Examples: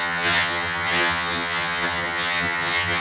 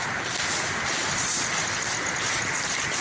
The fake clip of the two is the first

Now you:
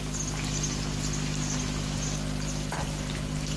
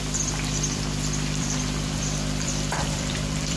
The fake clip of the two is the second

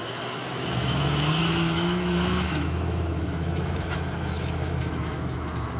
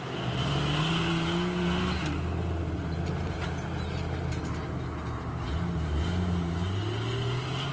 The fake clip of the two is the first